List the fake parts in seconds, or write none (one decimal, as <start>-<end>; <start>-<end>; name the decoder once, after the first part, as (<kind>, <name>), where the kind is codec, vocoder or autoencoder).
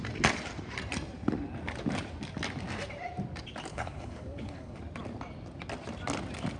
3.7-4.8 (codec, HILCodec)